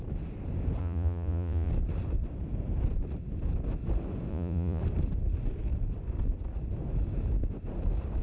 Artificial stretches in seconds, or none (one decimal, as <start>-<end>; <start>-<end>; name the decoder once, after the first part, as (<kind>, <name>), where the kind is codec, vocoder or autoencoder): 0.8-1.7 (vocoder, Vocos); 4.3-4.8